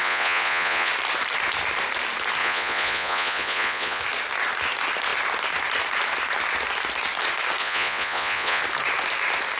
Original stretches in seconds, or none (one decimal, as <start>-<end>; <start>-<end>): 0.9-2.4; 4.0-7.6; 8.6-9.6